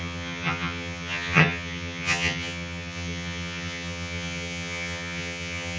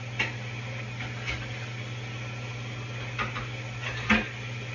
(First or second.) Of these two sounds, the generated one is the first